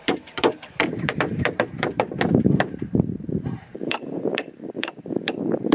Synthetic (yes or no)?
yes